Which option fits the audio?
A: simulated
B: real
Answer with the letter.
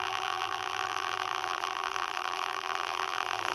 A